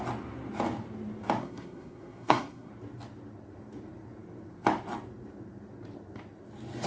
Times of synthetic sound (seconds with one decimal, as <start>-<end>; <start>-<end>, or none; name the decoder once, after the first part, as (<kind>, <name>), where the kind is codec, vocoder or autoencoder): 1.4-2.7 (codec, SNAC)